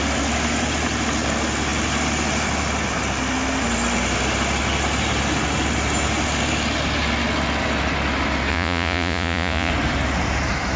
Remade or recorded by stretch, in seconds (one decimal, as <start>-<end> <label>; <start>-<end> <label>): 0.0-8.5 recorded; 8.5-9.7 remade; 9.7-10.8 recorded